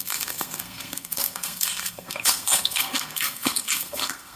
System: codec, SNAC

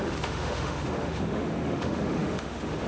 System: autoencoder, DAC-VAE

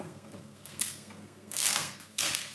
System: codec, SNAC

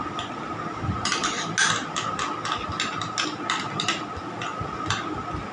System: none